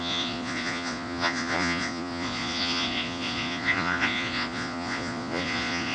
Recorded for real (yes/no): no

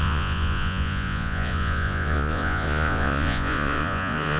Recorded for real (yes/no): no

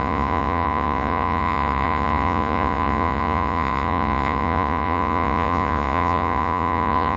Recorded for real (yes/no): no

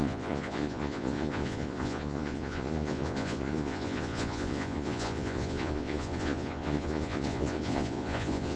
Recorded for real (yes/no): no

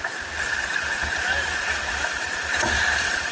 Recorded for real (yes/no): yes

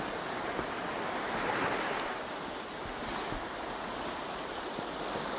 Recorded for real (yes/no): yes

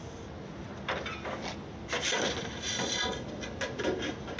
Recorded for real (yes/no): yes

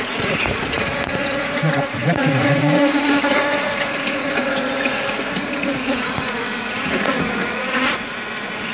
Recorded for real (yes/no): no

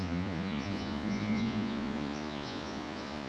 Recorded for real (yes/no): no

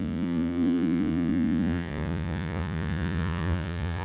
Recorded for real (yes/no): no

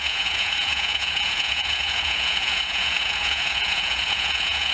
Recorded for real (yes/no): no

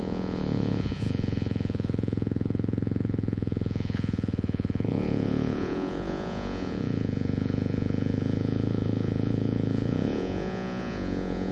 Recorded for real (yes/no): no